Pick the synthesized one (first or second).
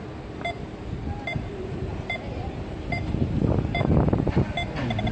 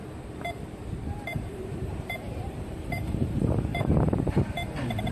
second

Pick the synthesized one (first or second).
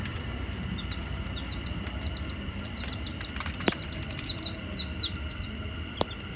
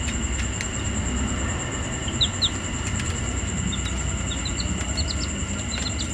first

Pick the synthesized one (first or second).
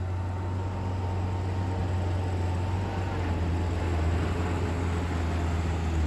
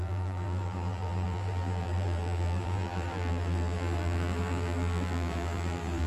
second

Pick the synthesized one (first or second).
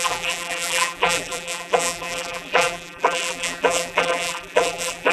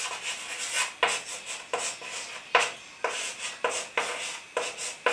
first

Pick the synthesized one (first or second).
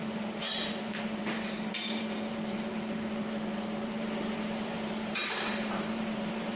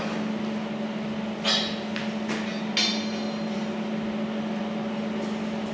first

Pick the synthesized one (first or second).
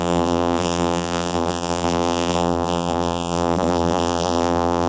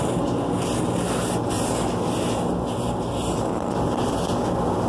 first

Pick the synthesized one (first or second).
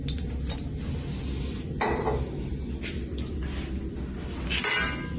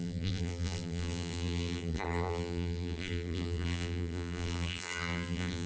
second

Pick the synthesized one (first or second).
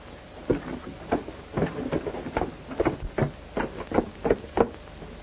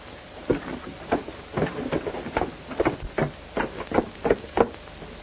second